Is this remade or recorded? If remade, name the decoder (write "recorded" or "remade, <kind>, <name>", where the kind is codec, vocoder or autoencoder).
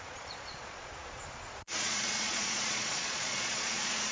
remade, vocoder, Vocos